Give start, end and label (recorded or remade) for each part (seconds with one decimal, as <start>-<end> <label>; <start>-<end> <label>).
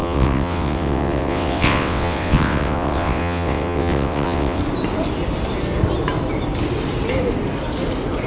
0.0-4.6 remade; 4.6-8.3 recorded